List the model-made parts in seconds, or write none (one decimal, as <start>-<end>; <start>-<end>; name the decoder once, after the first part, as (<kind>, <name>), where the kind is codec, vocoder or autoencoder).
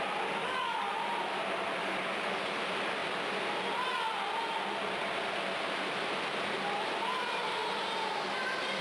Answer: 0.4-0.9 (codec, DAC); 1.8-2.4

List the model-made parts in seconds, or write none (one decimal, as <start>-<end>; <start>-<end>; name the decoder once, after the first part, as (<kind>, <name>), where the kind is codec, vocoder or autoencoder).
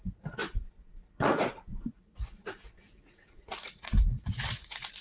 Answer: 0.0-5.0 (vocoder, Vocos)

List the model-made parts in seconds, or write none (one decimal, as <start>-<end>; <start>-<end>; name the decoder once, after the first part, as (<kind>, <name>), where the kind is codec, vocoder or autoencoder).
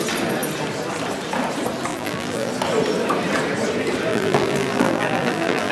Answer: 1.9-2.5 (vocoder, BigVGAN v2); 4.1-5.7